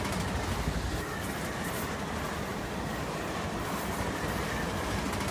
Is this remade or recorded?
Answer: recorded